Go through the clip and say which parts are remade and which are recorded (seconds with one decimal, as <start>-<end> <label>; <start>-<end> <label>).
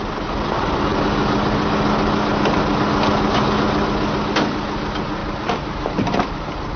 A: 0.0-5.2 recorded; 5.2-6.8 remade